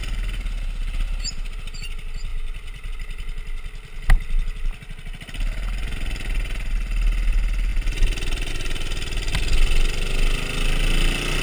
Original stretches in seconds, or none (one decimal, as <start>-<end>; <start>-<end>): 0.0-11.4